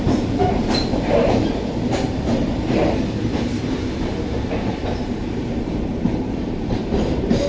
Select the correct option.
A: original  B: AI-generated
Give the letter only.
B